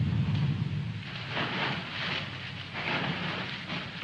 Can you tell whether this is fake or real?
real